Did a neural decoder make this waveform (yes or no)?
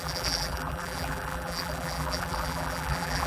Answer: yes